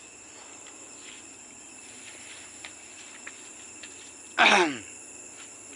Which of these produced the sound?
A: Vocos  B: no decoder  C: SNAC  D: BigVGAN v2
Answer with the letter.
B